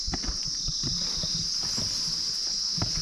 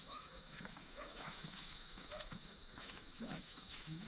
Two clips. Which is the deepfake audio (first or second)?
second